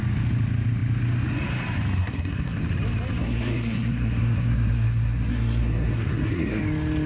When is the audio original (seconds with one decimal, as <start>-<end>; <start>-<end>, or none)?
0.0-2.0; 2.6-3.2; 6.6-7.1